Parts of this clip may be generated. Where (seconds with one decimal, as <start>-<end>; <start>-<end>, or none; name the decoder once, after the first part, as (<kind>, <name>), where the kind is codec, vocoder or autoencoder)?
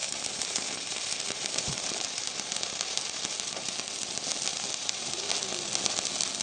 0.0-3.7 (vocoder, BigVGAN v2); 4.5-5.3